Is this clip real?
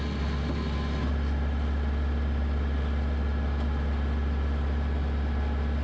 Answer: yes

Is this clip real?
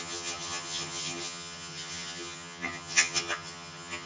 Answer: no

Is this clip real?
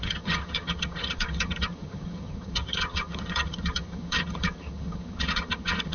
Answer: no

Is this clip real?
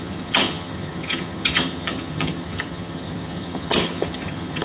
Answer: no